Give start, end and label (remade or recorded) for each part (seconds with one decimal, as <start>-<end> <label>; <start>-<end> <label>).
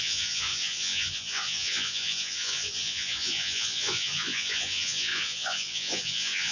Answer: 0.0-6.5 remade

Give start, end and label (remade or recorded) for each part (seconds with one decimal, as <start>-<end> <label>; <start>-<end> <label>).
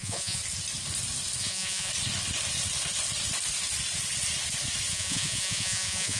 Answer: 0.0-0.4 remade; 0.4-1.4 recorded; 1.4-1.9 remade; 1.9-4.9 recorded; 4.9-6.2 remade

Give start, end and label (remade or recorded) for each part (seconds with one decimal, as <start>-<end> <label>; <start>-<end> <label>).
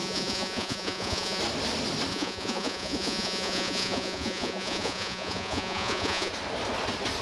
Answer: 0.0-1.4 remade; 1.4-2.1 recorded; 2.1-6.3 remade; 6.3-7.2 recorded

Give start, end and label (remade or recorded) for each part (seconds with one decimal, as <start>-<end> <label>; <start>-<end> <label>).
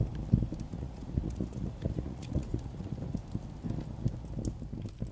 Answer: 0.0-0.7 recorded; 0.7-3.2 remade; 3.2-5.1 recorded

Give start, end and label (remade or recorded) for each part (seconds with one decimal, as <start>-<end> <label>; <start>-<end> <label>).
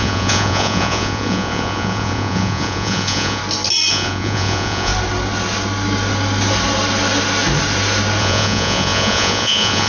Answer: 0.0-3.4 remade; 3.4-3.9 recorded; 3.9-4.9 remade; 4.9-8.2 recorded; 8.2-9.9 remade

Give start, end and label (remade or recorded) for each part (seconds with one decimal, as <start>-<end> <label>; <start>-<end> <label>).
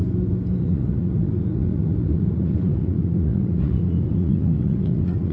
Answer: 0.0-0.6 recorded; 0.6-5.3 remade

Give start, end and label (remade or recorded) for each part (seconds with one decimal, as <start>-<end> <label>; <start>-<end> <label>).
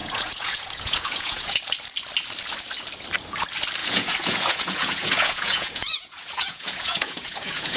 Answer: 0.0-1.6 remade; 1.6-3.8 recorded; 3.8-7.8 remade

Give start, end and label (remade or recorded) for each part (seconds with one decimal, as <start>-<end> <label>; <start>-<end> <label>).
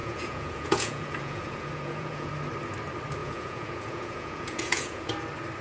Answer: 0.0-2.3 remade; 2.3-3.2 recorded; 3.2-5.1 remade; 5.1-5.6 recorded